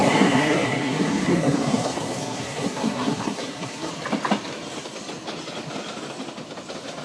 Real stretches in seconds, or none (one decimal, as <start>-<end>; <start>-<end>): 3.9-7.0